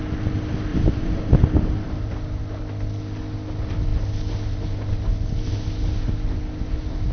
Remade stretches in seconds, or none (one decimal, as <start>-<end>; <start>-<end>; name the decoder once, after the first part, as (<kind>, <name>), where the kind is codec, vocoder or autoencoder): 0.7-1.3 (vocoder, BigVGAN v2)